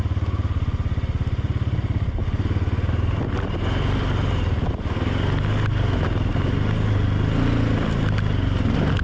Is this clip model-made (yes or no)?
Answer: no